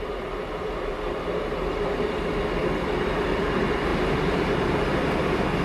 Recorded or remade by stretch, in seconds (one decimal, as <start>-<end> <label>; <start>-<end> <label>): 0.0-2.3 remade; 2.3-3.9 recorded; 3.9-5.0 remade; 5.0-5.6 recorded